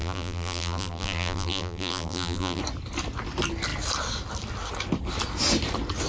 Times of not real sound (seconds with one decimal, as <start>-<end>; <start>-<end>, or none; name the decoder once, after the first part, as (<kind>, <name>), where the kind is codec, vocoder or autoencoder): 0.0-2.6 (vocoder, BigVGAN v2)